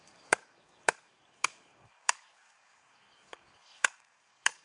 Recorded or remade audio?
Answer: remade